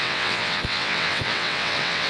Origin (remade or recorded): remade